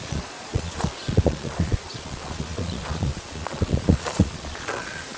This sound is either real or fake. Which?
fake